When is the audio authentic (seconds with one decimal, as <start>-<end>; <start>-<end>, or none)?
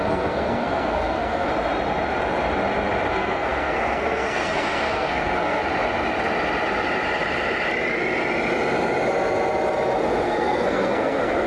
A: 1.5-3.1; 5.6-10.2